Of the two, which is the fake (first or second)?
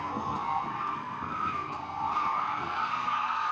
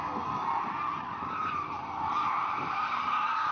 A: first